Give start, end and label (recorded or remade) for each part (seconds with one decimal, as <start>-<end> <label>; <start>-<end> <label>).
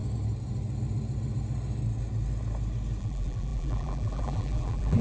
0.0-3.0 recorded; 3.0-5.0 remade